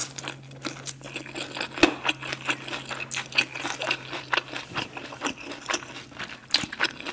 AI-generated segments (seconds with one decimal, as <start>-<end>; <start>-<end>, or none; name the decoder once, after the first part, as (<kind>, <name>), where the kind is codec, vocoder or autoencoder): none